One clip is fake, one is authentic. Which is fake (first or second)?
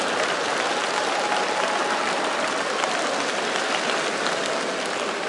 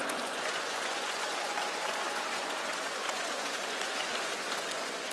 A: second